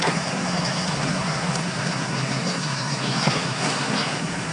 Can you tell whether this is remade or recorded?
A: remade